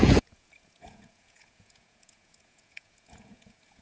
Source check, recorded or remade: remade